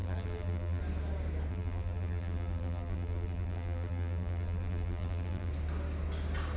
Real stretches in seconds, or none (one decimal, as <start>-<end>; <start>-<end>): 0.8-1.5; 5.5-6.6

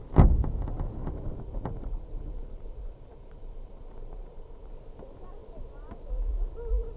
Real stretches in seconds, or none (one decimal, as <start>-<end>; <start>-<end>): 0.0-1.0; 4.7-7.0

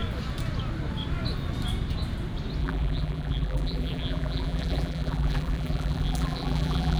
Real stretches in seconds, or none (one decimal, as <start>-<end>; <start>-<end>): 0.0-2.6

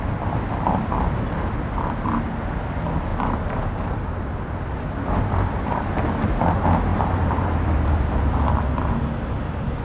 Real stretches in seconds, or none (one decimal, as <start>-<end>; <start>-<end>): 0.0-3.1; 5.8-6.9; 8.1-9.8

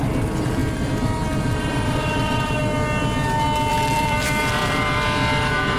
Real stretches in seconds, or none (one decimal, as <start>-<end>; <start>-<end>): 0.6-3.7; 4.6-5.8

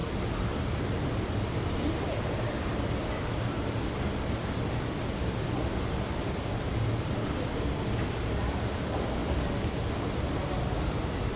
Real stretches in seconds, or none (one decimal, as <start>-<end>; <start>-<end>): 0.0-11.4

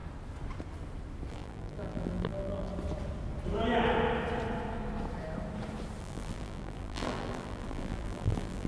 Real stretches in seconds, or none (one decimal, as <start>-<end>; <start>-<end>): 0.0-1.3; 2.7-6.0